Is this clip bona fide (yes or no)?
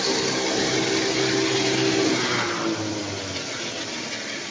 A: yes